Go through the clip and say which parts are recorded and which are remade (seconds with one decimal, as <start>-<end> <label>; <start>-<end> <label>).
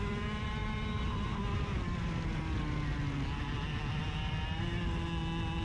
0.0-5.6 recorded